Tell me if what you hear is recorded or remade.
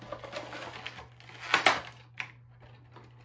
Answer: recorded